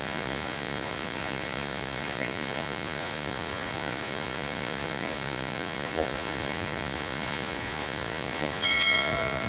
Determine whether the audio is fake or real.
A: fake